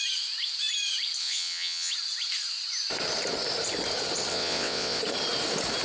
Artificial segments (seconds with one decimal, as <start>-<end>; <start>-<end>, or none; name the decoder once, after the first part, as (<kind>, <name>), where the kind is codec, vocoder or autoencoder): 1.2-1.9 (vocoder, WaveNeXt); 4.3-5.0